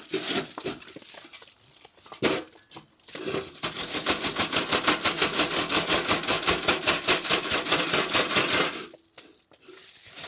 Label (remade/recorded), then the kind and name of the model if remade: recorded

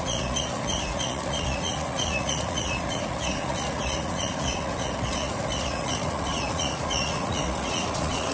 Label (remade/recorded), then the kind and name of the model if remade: remade, vocoder, Vocos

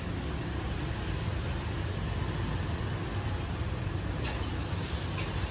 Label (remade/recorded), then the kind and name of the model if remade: recorded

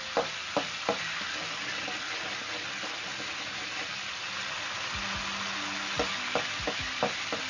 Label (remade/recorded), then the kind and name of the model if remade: recorded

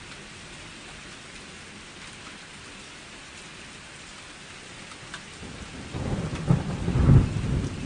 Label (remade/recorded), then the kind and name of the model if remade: recorded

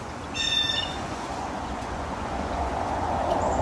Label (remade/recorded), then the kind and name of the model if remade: remade, vocoder, Vocos